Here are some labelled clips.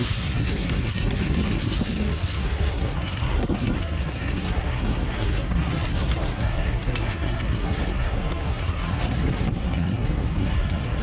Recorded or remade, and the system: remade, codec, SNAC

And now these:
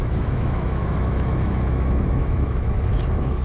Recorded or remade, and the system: remade, autoencoder, DAC-VAE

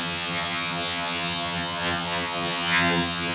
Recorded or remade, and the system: remade, vocoder, HiFi-GAN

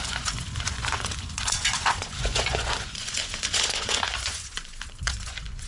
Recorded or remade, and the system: remade, vocoder, Vocos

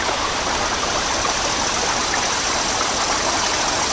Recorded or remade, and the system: recorded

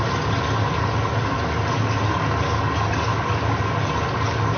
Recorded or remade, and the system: recorded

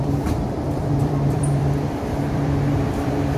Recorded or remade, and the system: remade, vocoder, BigVGAN v2